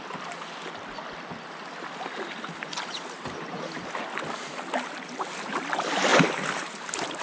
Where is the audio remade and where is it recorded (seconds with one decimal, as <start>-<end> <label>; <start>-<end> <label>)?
0.0-7.2 recorded